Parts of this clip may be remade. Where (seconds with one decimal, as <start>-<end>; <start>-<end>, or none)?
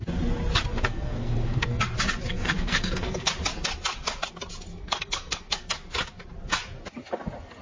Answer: 0.7-1.8; 2.3-3.3; 4.7-5.7